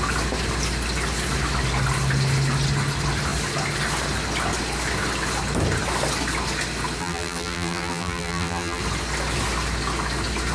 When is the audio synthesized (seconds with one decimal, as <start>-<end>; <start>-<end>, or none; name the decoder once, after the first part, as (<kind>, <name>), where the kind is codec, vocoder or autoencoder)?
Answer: 7.0-8.8 (vocoder, BigVGAN v2)